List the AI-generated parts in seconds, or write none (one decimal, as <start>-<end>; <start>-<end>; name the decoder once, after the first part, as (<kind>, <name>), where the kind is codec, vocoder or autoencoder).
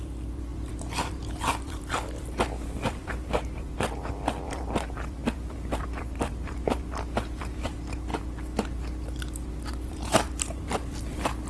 0.0-8.1 (vocoder, BigVGAN v2); 9.7-11.5